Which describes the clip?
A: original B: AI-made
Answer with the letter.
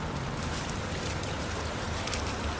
A